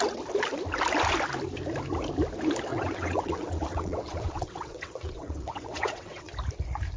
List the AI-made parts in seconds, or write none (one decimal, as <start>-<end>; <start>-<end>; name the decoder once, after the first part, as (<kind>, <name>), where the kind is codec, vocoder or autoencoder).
2.7-6.3 (vocoder, WaveNeXt)